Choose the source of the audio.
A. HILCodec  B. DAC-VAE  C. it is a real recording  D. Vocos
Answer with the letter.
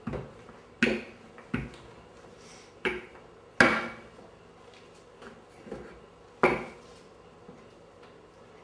C